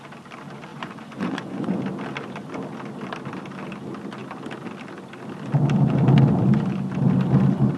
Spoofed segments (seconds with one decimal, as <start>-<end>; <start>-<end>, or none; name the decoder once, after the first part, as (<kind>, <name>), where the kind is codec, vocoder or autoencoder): 0.7-1.8 (vocoder, Vocos)